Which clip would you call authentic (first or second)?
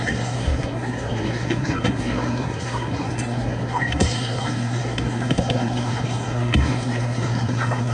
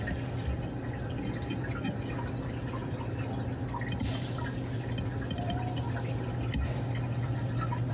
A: second